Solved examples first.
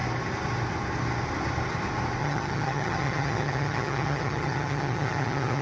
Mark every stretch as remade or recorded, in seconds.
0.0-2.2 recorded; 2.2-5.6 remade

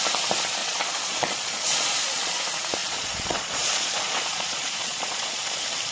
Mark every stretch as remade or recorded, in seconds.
0.0-0.6 recorded; 0.6-2.4 remade; 2.4-2.8 recorded; 2.8-5.5 remade; 5.5-5.9 recorded

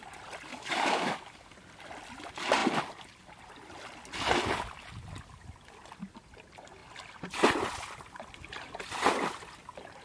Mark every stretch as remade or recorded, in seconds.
0.0-0.5 recorded; 0.5-1.5 remade; 1.5-10.0 recorded

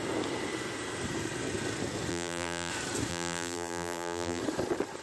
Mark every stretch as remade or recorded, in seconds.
0.0-2.1 recorded; 2.1-2.7 remade; 2.7-3.1 recorded; 3.1-4.4 remade; 4.4-5.0 recorded

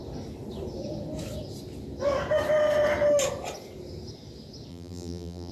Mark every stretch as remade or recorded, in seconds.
0.0-4.7 recorded; 4.7-5.5 remade

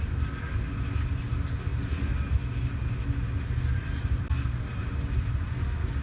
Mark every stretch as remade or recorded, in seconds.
0.0-6.0 recorded